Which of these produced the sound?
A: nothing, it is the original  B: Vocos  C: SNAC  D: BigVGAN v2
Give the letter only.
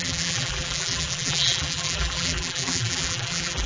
D